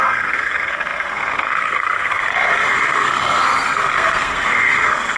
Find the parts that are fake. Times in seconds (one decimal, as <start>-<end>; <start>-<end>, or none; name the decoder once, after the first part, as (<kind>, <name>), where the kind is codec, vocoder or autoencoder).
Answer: 0.0-5.2 (codec, SNAC)